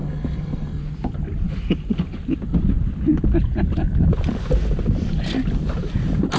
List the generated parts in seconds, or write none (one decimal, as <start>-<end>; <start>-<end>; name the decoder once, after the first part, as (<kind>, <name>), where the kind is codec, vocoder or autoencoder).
0.0-0.8 (codec, SNAC)

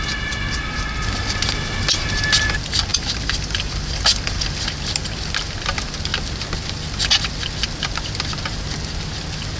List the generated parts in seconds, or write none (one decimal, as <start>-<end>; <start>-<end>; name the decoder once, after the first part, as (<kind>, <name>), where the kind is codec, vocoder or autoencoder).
2.9-4.7 (vocoder, BigVGAN v2)

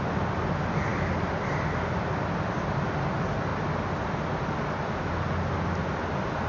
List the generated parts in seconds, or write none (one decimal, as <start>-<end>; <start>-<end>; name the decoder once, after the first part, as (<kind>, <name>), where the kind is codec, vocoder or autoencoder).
none